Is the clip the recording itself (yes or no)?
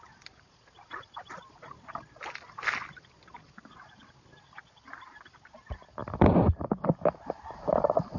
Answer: yes